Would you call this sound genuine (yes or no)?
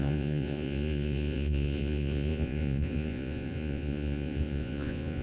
no